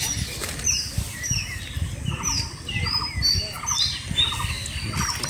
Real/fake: real